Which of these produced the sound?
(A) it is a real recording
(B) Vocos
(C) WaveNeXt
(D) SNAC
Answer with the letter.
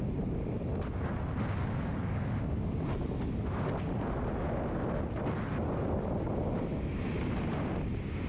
A